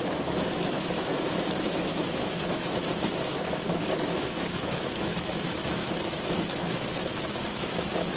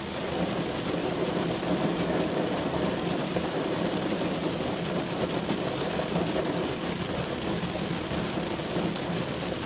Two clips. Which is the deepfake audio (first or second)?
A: first